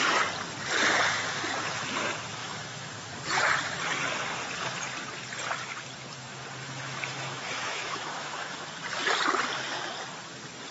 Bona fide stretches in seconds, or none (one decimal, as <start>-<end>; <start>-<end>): 0.0-2.4; 2.9-6.6; 8.6-10.7